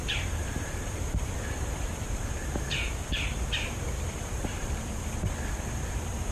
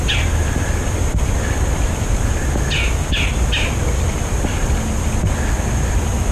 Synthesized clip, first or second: first